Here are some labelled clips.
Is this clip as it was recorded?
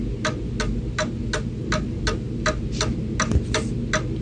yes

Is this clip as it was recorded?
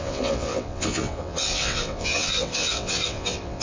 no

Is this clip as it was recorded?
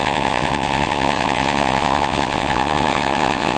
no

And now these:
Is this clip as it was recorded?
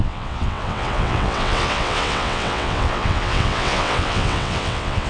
no